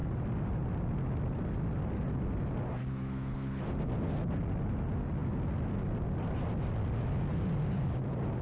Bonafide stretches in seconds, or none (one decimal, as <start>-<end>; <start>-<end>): 0.0-2.8; 3.6-8.4